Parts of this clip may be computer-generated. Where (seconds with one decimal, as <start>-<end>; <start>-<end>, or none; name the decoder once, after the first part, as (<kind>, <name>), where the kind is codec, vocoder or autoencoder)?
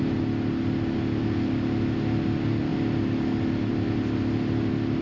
none